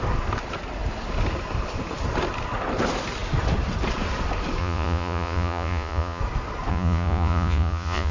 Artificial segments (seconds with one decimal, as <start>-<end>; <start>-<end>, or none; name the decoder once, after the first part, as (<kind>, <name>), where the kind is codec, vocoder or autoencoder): 4.6-6.2 (vocoder, Vocos); 6.7-8.1